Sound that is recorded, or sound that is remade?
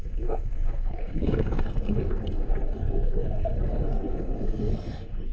remade